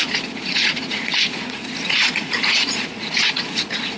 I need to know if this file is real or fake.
fake